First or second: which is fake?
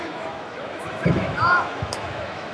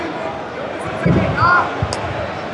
first